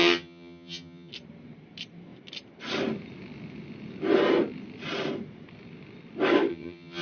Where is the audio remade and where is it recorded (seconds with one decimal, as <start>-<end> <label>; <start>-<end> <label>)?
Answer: 0.0-1.1 remade; 1.1-6.5 recorded; 6.5-7.0 remade